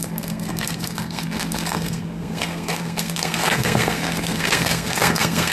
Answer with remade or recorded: remade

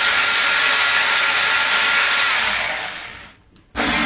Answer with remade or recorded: recorded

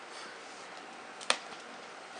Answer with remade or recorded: recorded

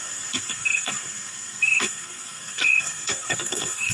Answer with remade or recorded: remade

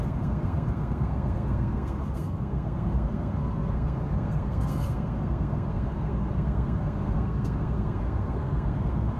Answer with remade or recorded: remade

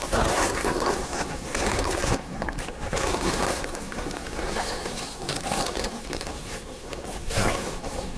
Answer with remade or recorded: remade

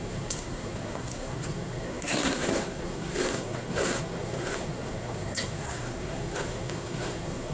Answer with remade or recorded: remade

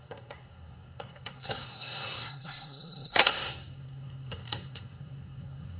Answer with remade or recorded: remade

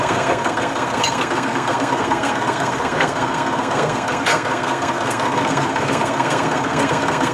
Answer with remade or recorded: remade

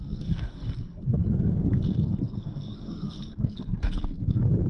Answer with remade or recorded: remade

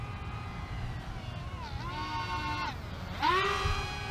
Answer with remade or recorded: recorded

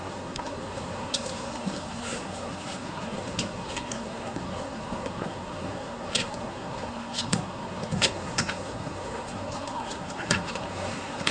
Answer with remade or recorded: remade